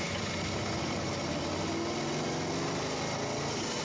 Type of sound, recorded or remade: recorded